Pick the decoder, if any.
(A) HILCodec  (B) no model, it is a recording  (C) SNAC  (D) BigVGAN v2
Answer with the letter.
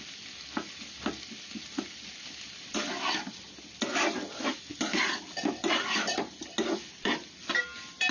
B